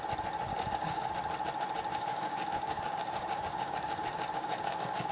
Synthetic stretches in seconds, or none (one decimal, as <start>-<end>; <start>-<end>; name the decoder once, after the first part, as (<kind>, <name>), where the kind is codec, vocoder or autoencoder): 0.5-1.1 (codec, DAC); 1.9-5.1

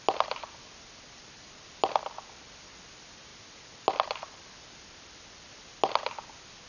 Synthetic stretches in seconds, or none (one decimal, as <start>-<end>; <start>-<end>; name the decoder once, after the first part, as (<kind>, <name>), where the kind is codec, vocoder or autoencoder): none

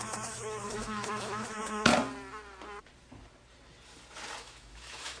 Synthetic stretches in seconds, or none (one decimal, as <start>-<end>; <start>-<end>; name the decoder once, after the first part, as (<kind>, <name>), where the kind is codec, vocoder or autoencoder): 0.0-1.9 (autoencoder, DAC-VAE); 4.4-5.2

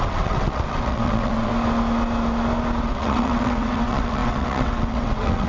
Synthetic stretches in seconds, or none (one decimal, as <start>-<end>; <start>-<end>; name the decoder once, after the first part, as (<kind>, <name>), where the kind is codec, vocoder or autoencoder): 0.0-1.5 (vocoder, WaveNeXt); 2.8-5.5